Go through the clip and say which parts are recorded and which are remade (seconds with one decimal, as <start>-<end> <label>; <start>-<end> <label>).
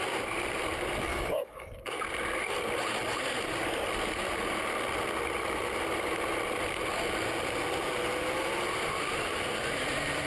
0.0-1.1 recorded; 1.1-2.0 remade; 2.0-10.3 recorded